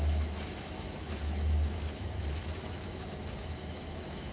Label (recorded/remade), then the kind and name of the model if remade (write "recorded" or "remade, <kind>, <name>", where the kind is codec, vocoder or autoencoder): remade, autoencoder, DAC-VAE